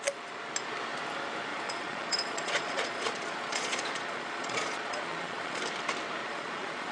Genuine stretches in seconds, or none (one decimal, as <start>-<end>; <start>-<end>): 0.0-1.5; 5.6-6.2